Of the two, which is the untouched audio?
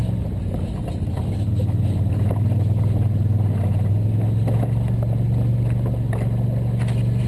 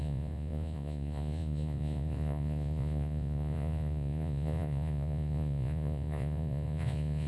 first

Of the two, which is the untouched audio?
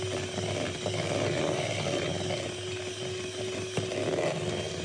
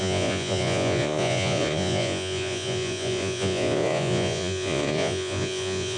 first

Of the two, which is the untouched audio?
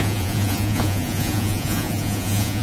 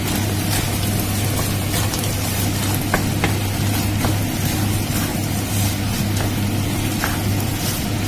second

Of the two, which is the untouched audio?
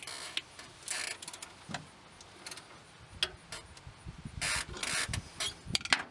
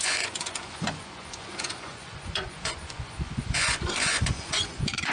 first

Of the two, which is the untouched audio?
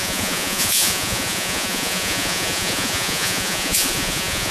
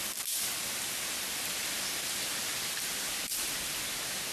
second